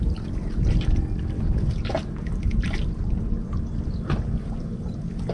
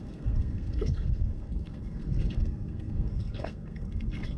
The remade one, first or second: second